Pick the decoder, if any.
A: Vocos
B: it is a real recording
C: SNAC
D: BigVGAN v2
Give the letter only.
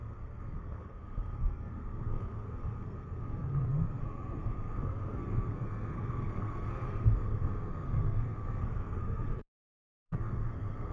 C